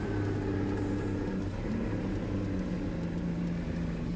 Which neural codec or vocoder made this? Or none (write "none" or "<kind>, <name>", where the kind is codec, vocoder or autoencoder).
none